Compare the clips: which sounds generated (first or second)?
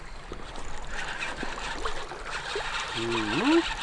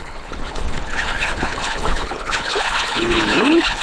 second